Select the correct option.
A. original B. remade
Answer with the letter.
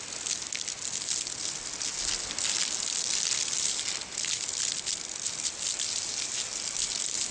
A